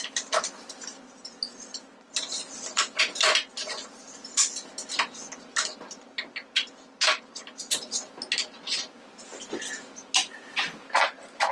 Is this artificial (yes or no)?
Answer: no